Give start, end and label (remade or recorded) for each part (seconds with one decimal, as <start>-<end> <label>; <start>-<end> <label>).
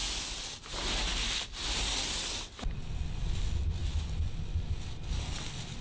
0.0-5.8 recorded